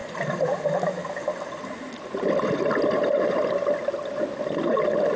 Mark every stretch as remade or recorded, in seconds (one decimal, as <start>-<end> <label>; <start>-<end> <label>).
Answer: 0.0-5.2 recorded